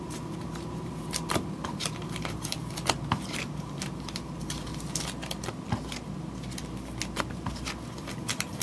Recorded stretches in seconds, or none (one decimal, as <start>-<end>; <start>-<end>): 2.6-3.1; 4.7-7.2